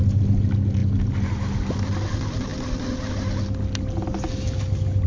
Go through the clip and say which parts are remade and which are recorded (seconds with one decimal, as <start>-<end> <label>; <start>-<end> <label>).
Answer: 0.0-5.1 recorded